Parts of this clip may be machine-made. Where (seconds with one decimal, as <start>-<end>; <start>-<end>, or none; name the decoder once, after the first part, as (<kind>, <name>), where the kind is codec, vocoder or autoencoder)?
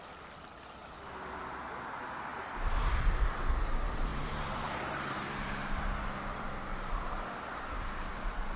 4.1-5.8 (vocoder, BigVGAN v2)